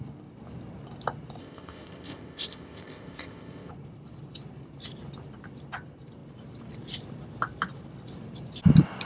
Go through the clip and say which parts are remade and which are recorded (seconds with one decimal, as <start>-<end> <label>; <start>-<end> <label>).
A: 0.0-1.4 recorded; 1.4-3.7 remade; 3.7-9.0 recorded